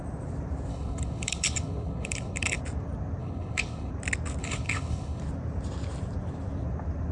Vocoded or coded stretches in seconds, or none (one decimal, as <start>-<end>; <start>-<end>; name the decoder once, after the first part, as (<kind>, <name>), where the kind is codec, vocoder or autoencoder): 0.7-2.6 (codec, HILCodec); 3.2-3.9; 4.4-5.2